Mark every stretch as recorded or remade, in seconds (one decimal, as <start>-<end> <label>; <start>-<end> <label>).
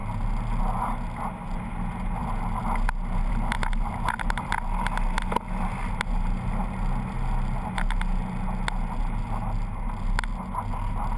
0.0-11.2 recorded